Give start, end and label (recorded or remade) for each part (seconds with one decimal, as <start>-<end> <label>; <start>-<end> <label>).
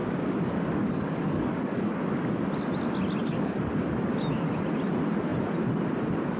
0.0-2.2 remade; 2.2-3.2 recorded; 3.2-3.7 remade; 3.7-6.4 recorded